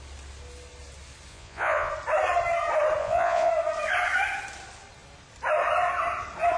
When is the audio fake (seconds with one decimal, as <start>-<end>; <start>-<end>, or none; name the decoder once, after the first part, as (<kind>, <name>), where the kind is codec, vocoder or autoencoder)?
1.3-1.9 (vocoder, Vocos); 3.0-3.5

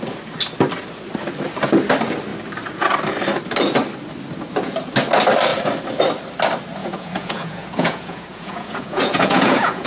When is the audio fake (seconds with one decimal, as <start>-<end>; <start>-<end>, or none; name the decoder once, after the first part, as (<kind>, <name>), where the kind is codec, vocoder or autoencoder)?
6.8-9.9 (vocoder, Vocos)

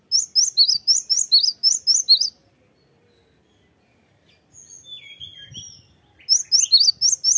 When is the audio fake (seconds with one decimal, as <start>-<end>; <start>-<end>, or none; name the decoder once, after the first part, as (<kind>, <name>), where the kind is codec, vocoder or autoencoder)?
none

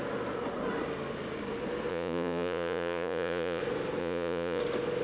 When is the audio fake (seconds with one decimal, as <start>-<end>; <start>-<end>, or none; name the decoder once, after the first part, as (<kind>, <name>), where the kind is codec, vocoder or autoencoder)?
1.9-3.6 (vocoder, Vocos); 4.0-4.6

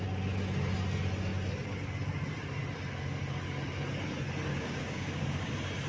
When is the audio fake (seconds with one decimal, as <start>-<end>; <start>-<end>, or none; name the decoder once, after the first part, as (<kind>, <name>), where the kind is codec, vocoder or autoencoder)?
4.5-5.5 (codec, DAC)

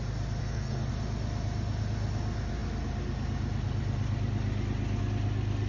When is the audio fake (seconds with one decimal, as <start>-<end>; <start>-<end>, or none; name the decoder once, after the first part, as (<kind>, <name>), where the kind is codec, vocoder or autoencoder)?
0.4-0.9 (codec, SNAC)